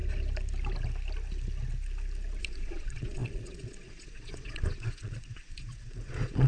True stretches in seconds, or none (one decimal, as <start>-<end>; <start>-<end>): 0.0-2.4